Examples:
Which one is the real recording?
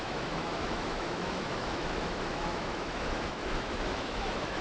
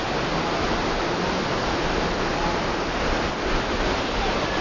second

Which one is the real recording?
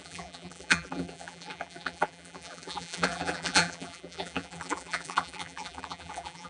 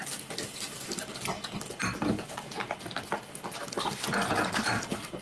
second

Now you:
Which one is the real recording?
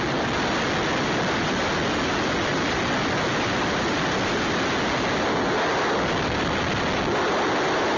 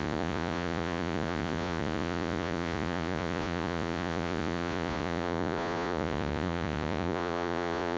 first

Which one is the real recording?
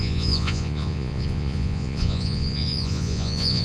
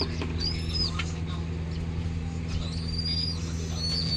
second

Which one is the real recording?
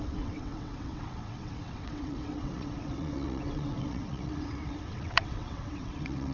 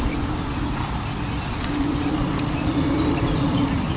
second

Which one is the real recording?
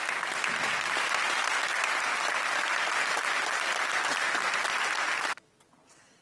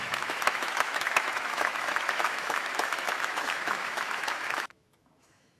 first